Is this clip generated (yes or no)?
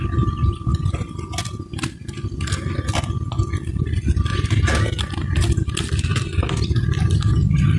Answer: no